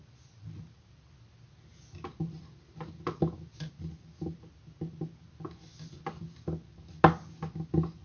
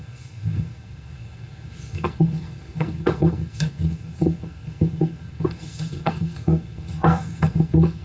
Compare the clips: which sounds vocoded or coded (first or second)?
second